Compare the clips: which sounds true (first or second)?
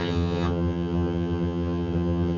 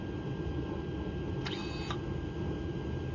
second